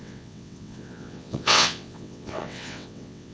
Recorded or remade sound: remade